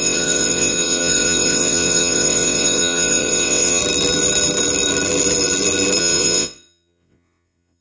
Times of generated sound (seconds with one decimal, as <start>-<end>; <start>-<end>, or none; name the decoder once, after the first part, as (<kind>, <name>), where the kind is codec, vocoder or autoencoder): 0.0-3.8 (vocoder, WaveNeXt); 6.0-7.8

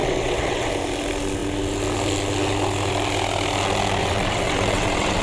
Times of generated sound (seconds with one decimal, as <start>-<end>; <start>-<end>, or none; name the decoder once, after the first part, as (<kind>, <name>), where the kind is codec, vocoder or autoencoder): 0.0-0.7 (vocoder, WaveNeXt); 4.0-5.2

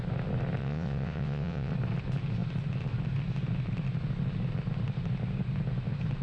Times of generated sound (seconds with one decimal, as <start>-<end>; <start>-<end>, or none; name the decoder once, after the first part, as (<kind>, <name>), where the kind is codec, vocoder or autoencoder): 0.6-1.7 (vocoder, WaveNeXt)

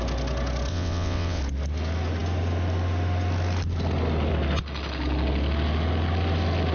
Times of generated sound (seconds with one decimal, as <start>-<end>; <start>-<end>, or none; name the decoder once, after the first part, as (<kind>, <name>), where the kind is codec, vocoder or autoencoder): 0.7-1.4 (vocoder, WaveNeXt)

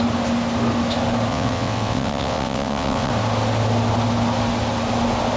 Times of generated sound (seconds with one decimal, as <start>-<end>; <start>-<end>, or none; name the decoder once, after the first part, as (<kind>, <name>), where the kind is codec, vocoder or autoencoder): 1.3-3.1 (vocoder, WaveNeXt)